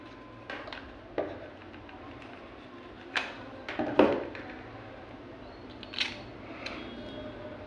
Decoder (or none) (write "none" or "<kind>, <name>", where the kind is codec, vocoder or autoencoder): none